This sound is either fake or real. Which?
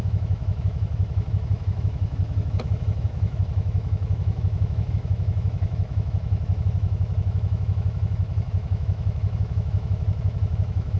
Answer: fake